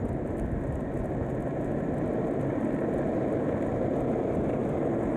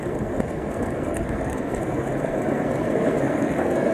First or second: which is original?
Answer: first